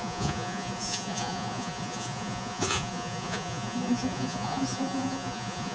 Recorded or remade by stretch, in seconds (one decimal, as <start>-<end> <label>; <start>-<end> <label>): 0.0-5.7 remade